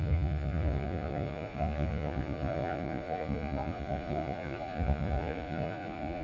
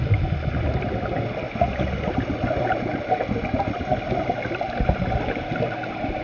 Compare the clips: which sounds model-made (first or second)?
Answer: first